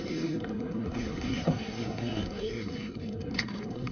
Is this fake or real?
fake